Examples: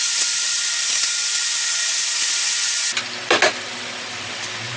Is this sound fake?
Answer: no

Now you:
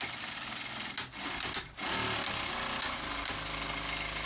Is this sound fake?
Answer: no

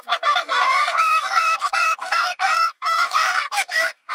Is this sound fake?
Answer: yes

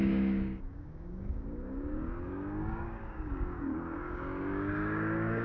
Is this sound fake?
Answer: yes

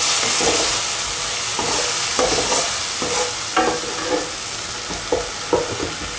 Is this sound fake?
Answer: no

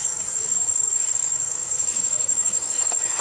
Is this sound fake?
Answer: yes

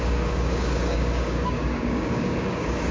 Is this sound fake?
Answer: yes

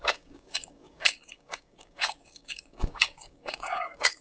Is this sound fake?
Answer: yes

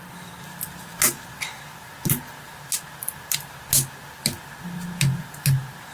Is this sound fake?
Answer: no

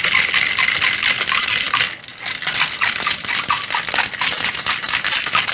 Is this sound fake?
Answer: no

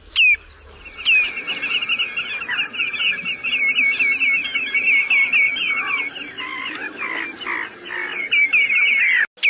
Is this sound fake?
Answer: no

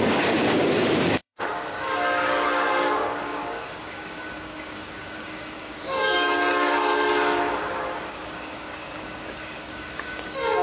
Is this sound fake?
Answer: yes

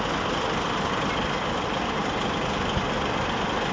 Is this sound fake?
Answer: no